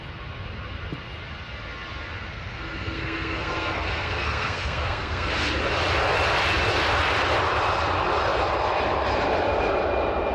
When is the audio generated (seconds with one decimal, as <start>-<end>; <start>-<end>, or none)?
2.3-5.3

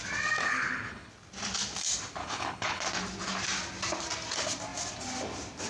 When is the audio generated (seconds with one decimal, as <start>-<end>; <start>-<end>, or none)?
0.4-1.1; 2.2-2.8